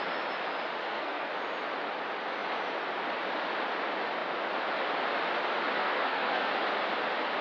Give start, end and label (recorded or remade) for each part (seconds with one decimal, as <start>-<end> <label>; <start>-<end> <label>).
0.0-0.8 recorded; 0.8-1.3 remade; 1.3-5.8 recorded; 5.8-6.5 remade; 6.5-7.4 recorded